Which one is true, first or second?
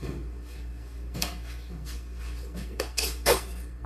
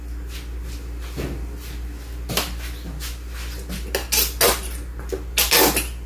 second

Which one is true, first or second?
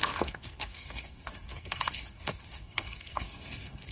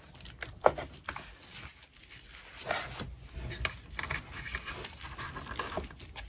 second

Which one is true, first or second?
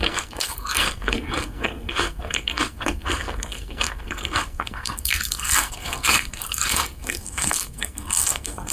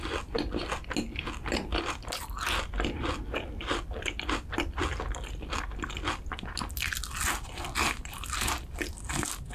second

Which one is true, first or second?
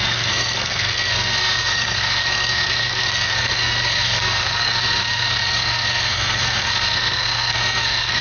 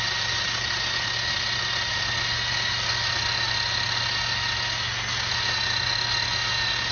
second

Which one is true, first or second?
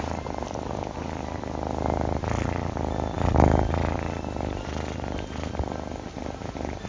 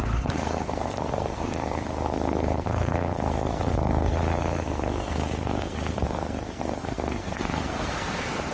first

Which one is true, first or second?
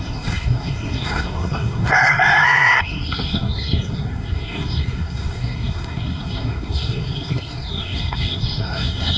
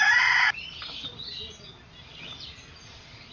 second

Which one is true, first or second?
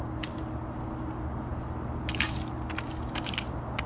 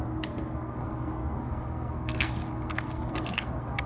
first